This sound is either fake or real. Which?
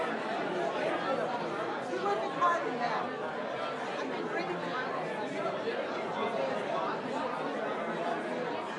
real